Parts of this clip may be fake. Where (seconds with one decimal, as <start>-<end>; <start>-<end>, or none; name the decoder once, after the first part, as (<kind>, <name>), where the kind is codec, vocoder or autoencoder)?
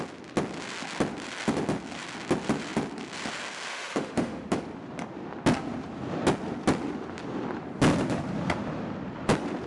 3.7-4.6 (autoencoder, DAC-VAE)